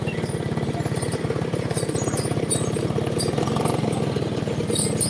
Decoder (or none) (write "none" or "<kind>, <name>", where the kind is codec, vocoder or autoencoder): none